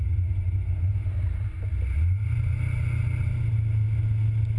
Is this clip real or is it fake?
real